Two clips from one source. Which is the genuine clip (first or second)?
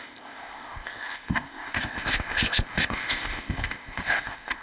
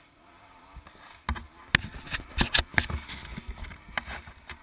second